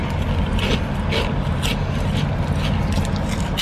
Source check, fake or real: real